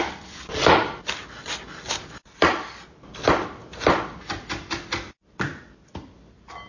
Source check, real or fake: real